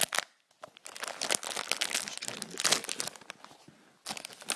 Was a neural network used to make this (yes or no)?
no